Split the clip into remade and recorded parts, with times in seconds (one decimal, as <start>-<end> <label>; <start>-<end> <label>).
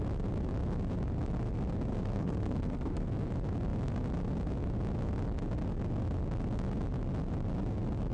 0.0-1.9 recorded; 1.9-3.3 remade; 3.3-8.1 recorded